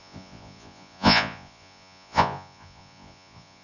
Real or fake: fake